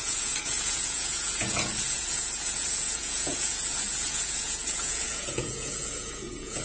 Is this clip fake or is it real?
fake